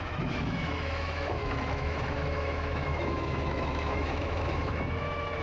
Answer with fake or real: fake